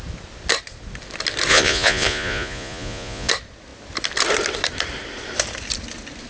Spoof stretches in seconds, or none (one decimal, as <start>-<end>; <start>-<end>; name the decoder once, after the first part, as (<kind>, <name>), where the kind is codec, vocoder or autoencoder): 1.5-3.3 (vocoder, Vocos)